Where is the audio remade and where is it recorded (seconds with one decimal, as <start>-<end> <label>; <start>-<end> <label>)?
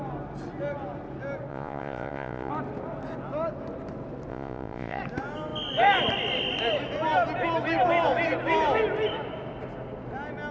0.0-1.5 recorded; 1.5-2.5 remade; 2.5-4.3 recorded; 4.3-5.0 remade; 5.0-10.5 recorded